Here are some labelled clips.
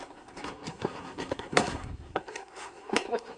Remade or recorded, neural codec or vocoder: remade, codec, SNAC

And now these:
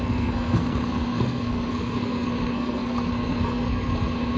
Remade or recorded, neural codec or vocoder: remade, codec, SNAC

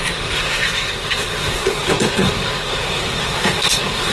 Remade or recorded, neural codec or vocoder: remade, codec, SNAC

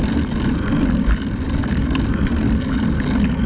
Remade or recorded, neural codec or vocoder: recorded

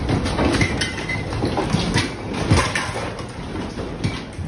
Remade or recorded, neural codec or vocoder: recorded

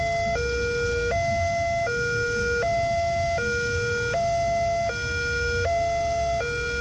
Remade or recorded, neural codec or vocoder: recorded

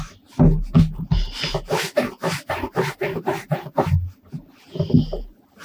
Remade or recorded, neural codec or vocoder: recorded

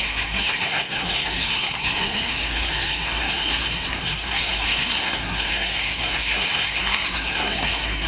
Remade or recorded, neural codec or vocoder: remade, codec, SNAC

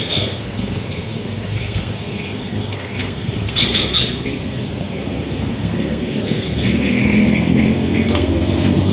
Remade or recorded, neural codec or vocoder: remade, codec, SNAC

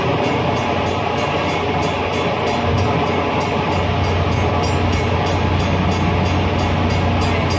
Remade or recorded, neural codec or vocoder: recorded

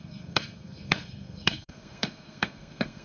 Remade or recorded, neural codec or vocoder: remade, codec, SNAC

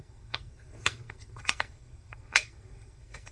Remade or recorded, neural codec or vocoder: remade, codec, SNAC